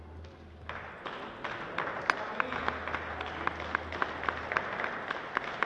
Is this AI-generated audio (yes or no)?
no